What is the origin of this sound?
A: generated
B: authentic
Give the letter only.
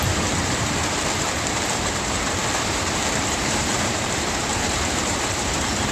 A